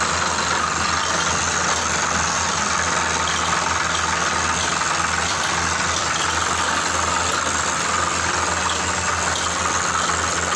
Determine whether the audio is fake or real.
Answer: real